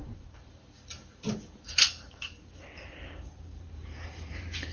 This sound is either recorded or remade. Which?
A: remade